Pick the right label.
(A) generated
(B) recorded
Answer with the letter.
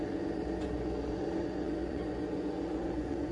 A